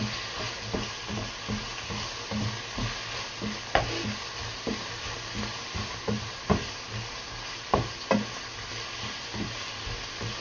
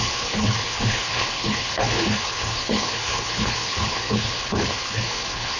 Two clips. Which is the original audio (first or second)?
first